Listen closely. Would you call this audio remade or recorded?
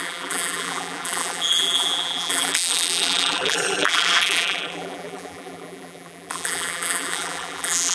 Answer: remade